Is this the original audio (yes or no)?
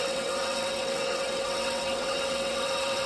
no